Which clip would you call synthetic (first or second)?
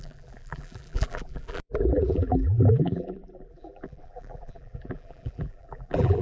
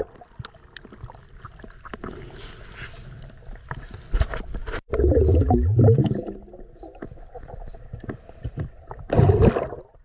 first